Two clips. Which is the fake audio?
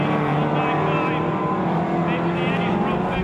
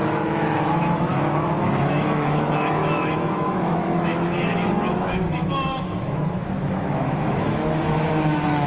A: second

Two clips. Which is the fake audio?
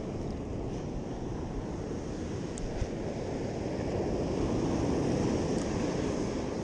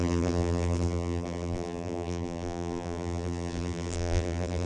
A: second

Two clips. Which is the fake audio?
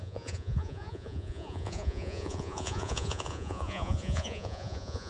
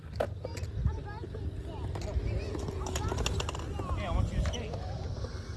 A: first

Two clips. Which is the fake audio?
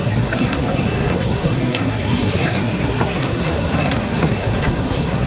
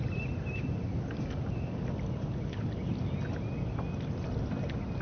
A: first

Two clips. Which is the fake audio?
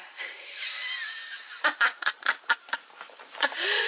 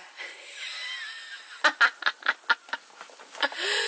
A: first